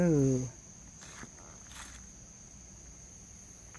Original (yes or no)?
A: yes